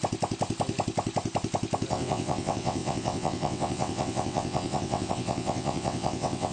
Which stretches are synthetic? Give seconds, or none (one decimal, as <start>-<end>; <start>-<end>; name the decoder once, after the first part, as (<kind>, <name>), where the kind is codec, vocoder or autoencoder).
1.9-6.5 (vocoder, WaveNeXt)